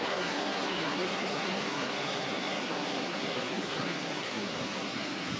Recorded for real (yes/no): no